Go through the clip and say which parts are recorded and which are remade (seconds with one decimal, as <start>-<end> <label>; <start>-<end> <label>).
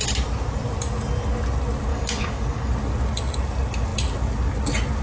0.0-1.9 recorded; 1.9-2.7 remade; 2.7-5.0 recorded